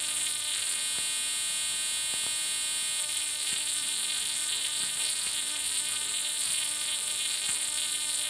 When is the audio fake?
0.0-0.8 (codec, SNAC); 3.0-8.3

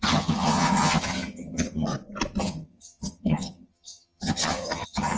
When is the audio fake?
0.0-1.9 (vocoder, HiFi-GAN); 2.4-5.2

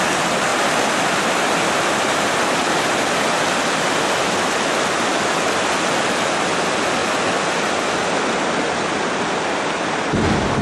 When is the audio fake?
none

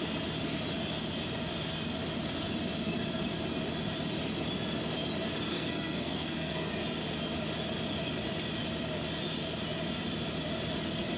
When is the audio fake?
5.5-6.7 (codec, SNAC)